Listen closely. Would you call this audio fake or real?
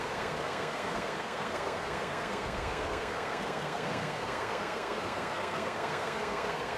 fake